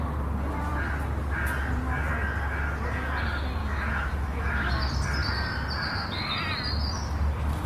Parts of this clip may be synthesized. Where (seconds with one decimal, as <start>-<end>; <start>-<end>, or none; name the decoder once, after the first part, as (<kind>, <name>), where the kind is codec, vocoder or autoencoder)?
3.6-4.7 (autoencoder, DAC-VAE)